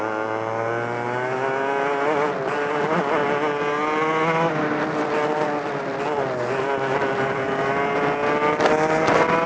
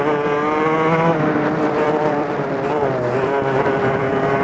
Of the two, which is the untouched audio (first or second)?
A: first